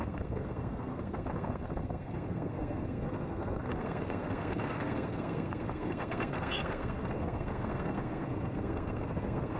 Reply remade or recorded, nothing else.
remade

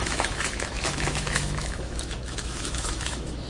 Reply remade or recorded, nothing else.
remade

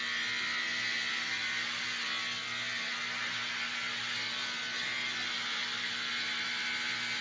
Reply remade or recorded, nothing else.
recorded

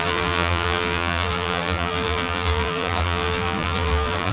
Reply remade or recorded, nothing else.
remade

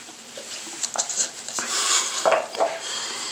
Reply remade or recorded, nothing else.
remade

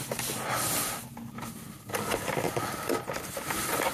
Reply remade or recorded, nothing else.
recorded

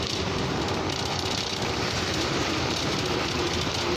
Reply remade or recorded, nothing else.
remade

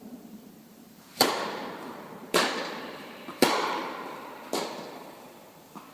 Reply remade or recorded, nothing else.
remade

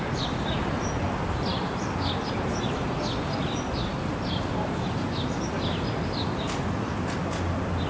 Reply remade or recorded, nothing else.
recorded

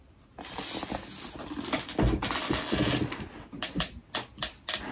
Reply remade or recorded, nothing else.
recorded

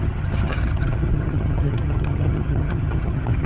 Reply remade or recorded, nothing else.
remade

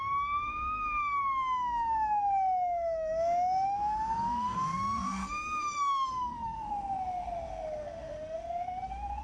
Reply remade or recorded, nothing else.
remade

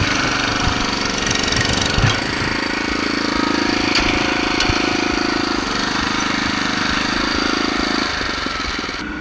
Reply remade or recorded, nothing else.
recorded